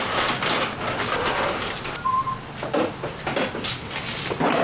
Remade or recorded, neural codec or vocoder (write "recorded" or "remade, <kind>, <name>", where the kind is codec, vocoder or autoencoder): recorded